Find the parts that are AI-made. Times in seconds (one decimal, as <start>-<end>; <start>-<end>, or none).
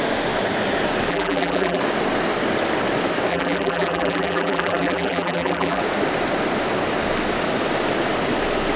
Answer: 1.1-1.8; 3.3-5.8